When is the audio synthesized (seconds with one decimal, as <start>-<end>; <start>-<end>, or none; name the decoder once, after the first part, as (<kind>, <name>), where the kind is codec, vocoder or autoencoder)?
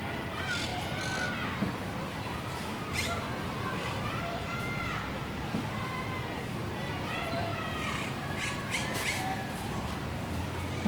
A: 0.7-4.2 (vocoder, BigVGAN v2); 5.2-6.2; 7.5-9.3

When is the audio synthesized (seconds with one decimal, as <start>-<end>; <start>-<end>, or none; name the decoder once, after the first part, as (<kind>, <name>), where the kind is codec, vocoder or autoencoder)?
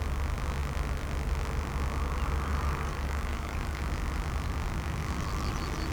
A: 2.5-3.8 (codec, DAC); 5.0-5.5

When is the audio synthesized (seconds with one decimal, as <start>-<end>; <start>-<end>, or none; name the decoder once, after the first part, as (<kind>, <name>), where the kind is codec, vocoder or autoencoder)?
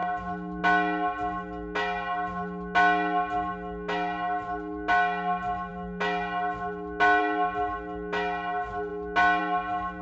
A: none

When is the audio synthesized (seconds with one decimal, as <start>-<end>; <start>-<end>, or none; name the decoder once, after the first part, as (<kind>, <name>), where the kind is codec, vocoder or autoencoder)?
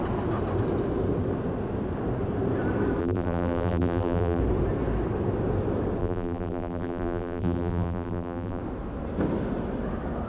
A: 3.0-4.4 (vocoder, BigVGAN v2); 6.0-8.6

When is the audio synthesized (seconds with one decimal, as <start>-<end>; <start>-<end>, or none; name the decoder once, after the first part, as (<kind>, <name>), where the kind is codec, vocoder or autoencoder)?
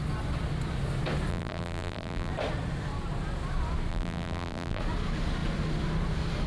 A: 1.3-2.3 (vocoder, BigVGAN v2); 3.9-4.8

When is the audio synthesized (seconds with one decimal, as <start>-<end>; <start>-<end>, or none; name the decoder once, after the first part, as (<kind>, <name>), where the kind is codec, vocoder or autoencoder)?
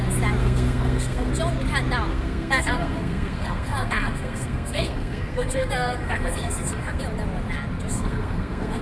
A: 0.4-1.3 (codec, SNAC); 2.1-7.0; 7.9-8.8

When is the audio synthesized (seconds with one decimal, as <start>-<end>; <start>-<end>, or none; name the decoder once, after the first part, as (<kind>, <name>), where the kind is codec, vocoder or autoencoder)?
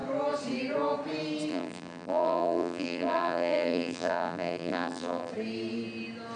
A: 1.5-5.3 (vocoder, BigVGAN v2)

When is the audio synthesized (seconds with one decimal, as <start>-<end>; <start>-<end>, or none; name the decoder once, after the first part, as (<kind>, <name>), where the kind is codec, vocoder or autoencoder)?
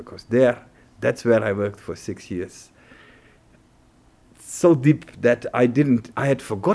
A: 4.2-5.0 (vocoder, BigVGAN v2)